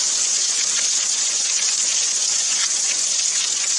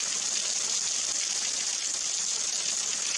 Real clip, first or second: second